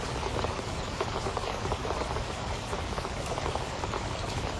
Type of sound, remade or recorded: remade